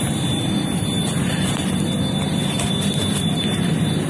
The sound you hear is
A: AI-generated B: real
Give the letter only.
A